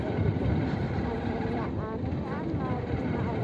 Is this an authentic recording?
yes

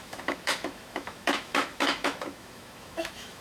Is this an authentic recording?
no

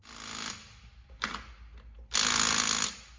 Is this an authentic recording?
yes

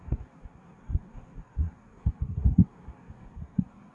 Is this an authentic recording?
no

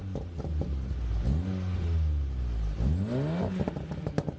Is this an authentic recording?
yes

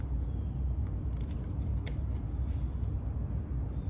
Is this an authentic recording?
yes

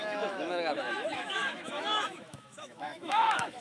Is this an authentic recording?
no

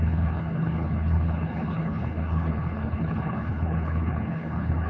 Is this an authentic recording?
no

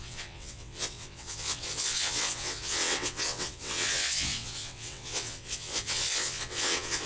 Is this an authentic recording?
no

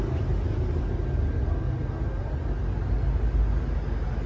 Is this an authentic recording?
yes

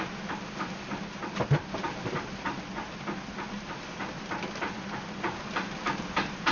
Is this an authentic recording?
yes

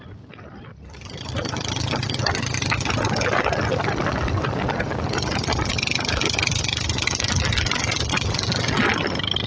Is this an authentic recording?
yes